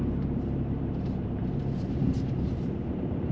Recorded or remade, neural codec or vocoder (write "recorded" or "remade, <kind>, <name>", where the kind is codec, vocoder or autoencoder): remade, vocoder, BigVGAN v2